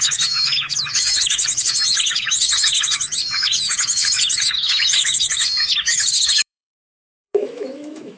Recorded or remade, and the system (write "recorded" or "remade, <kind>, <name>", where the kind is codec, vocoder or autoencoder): remade, autoencoder, DAC-VAE